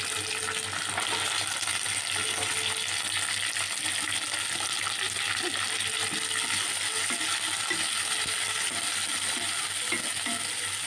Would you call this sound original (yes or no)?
yes